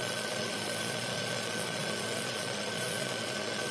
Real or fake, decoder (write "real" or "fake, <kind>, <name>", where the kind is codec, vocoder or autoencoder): fake, vocoder, Vocos